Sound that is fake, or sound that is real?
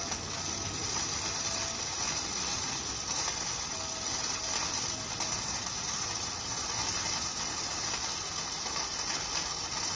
real